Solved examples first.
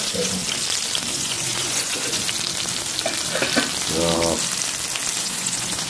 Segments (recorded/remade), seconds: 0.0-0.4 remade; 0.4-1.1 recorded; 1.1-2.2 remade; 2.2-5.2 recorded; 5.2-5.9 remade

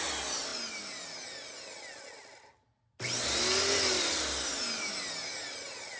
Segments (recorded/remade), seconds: 0.0-6.0 recorded

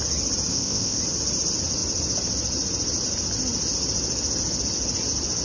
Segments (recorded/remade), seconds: 0.0-0.5 recorded; 0.5-1.0 remade; 1.0-5.4 recorded

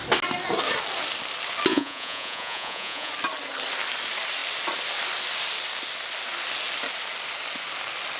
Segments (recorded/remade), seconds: 0.0-1.7 recorded; 1.7-3.1 remade; 3.1-8.2 recorded

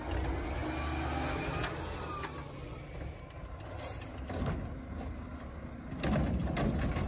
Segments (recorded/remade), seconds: 0.0-7.1 recorded